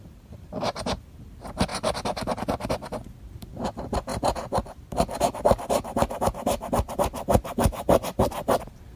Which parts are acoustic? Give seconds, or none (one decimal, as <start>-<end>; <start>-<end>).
1.7-3.3; 4.1-6.9